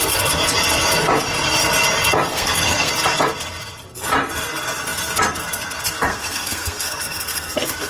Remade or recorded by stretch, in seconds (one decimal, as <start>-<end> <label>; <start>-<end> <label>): 0.0-2.3 recorded; 2.3-2.9 remade; 2.9-6.1 recorded; 6.1-7.9 remade